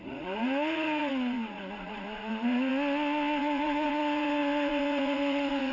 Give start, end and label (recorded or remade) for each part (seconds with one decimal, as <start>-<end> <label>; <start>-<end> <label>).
0.0-2.7 remade; 2.7-3.4 recorded; 3.4-5.7 remade